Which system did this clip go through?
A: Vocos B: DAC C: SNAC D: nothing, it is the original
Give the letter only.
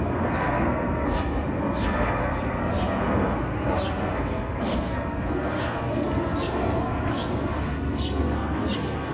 C